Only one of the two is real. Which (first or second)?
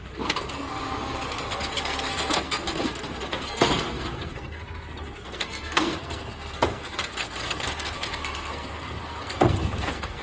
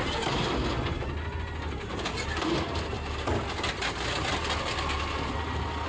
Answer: second